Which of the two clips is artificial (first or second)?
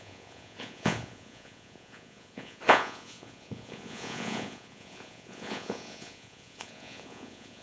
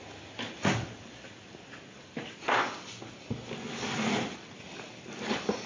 first